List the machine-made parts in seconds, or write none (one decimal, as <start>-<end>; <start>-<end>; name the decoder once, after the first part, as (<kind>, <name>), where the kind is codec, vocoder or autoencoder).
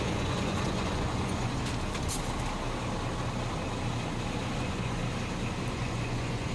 0.0-1.6 (vocoder, Vocos); 4.6-5.0; 5.7-6.5